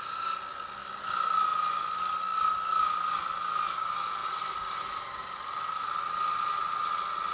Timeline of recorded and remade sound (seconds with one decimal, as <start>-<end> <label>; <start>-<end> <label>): 0.0-7.3 recorded